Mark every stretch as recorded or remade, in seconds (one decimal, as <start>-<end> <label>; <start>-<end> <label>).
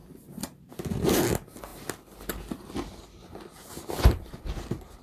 0.0-5.0 recorded